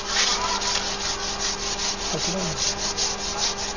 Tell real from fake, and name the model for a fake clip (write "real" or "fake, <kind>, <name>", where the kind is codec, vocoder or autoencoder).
real